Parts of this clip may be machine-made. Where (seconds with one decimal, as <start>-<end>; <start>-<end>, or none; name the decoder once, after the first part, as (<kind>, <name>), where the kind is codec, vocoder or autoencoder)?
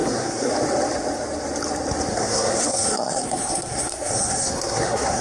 0.0-0.5 (codec, SNAC); 2.1-5.2